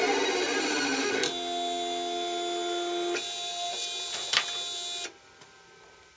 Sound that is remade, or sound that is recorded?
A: recorded